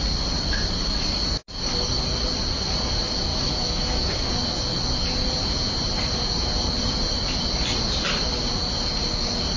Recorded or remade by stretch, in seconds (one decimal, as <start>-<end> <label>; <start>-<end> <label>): 0.0-3.3 recorded; 3.3-4.3 remade; 4.3-9.6 recorded